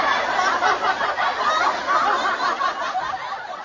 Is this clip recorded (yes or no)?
yes